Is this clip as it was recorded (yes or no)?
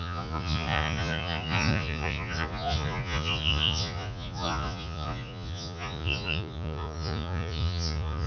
no